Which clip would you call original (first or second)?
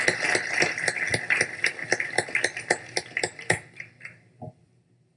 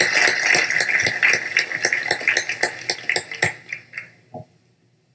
second